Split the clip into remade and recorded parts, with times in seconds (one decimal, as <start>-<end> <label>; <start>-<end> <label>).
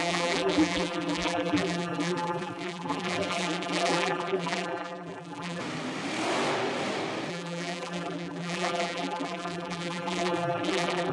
0.0-5.6 remade; 5.6-7.3 recorded; 7.3-11.1 remade